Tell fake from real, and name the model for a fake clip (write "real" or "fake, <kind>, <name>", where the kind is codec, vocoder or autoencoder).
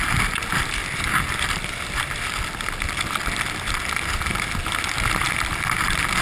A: real